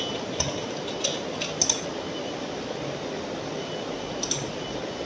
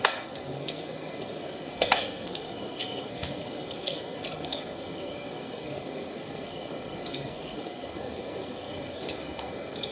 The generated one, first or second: second